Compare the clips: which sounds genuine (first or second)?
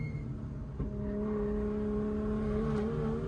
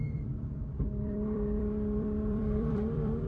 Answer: first